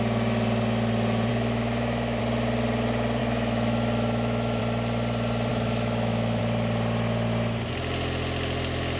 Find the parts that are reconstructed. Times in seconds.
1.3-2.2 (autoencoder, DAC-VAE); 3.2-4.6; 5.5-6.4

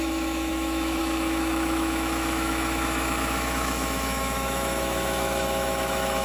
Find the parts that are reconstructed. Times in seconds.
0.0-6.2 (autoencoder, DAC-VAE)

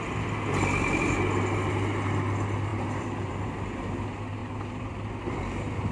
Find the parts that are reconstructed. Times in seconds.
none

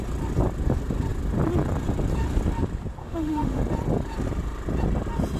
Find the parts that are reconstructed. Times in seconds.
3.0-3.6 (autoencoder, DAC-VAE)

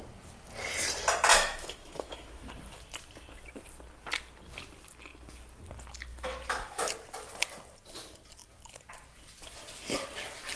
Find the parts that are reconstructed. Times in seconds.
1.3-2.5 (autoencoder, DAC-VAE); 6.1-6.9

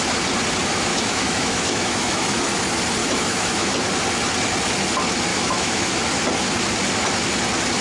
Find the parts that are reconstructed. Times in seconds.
0.9-2.4 (autoencoder, DAC-VAE); 3.0-3.7; 5.3-6.0

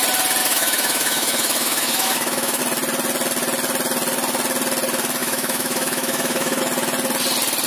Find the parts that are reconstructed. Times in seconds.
0.4-2.6 (autoencoder, DAC-VAE); 5.2-6.6

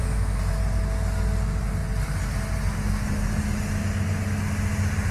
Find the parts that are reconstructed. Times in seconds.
0.0-0.6 (autoencoder, DAC-VAE)